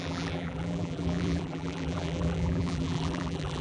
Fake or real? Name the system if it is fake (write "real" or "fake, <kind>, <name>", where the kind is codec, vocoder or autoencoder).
fake, vocoder, BigVGAN v2